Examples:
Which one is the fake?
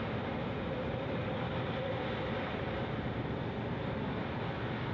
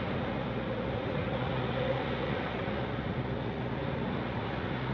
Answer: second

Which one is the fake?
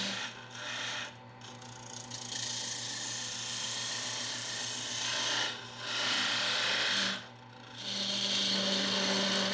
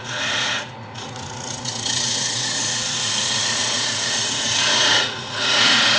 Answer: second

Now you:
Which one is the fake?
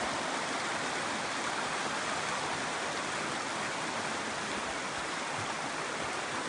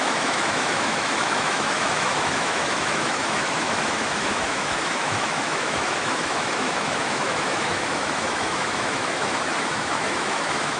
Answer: second